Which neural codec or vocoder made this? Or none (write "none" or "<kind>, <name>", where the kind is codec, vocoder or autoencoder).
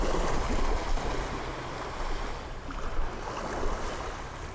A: none